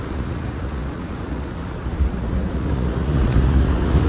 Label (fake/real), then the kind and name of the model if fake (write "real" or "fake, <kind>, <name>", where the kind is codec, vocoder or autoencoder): fake, vocoder, Vocos